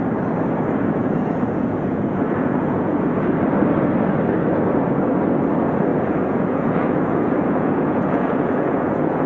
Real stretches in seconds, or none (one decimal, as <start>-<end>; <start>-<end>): 0.0-1.0; 3.3-5.9